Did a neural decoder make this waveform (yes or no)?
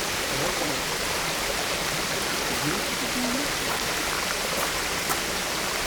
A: yes